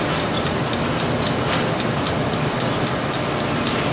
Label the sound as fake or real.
real